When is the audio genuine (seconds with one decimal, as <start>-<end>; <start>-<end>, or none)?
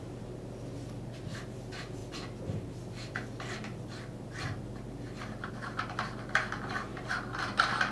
0.0-7.9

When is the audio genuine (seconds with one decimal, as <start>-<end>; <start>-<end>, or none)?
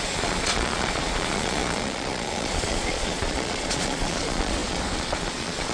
none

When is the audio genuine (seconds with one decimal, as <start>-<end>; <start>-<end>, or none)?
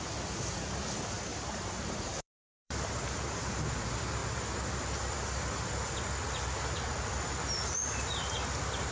0.0-1.3; 3.6-8.9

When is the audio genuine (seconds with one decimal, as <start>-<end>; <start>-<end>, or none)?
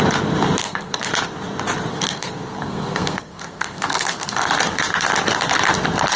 0.0-0.6; 1.1-1.9; 4.5-6.2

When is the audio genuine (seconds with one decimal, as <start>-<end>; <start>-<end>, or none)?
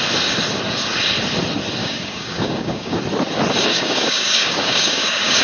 0.0-1.8; 3.0-3.7